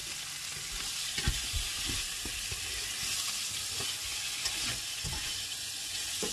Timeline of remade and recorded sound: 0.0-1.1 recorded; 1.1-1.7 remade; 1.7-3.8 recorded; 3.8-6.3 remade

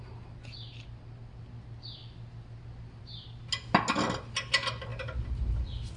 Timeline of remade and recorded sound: 0.0-6.0 recorded